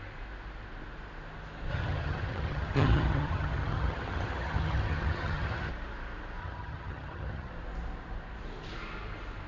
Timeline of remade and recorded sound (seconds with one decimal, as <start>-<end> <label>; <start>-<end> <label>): 0.0-1.7 recorded; 1.7-5.7 remade; 5.7-6.4 recorded; 6.4-7.5 remade; 7.5-9.5 recorded